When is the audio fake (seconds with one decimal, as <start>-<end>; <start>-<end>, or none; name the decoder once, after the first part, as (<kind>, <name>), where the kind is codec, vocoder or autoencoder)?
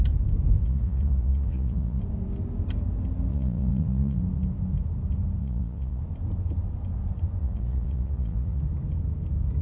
0.6-2.0 (vocoder, Vocos); 3.3-4.2; 5.4-6.0; 7.4-8.6